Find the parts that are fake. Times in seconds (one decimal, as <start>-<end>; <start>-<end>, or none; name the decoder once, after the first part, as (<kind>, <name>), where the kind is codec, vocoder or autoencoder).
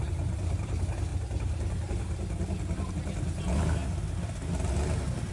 none